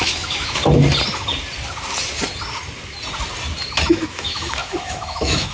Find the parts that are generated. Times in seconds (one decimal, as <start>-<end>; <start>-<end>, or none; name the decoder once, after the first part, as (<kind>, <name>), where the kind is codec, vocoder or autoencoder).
0.0-0.6 (autoencoder, DAC-VAE); 3.9-5.5

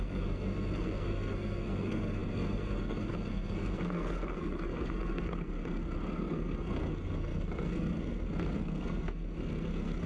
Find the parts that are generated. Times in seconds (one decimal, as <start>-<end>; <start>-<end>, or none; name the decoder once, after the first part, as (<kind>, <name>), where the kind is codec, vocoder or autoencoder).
0.0-10.1 (codec, SNAC)

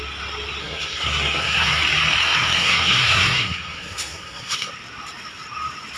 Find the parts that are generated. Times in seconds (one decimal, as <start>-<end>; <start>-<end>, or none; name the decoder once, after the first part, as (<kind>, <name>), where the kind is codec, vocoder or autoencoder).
0.6-1.8 (codec, SNAC); 2.2-4.7

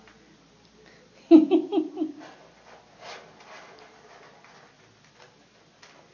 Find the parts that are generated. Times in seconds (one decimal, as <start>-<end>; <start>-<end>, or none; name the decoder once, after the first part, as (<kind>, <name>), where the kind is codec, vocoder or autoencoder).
none

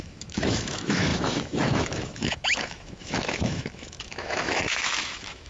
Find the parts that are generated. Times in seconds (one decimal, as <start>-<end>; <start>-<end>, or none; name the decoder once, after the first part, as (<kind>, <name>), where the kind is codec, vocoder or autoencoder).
0.0-5.5 (autoencoder, DAC-VAE)